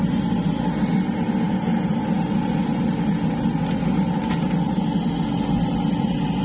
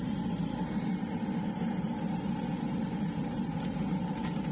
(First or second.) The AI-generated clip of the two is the second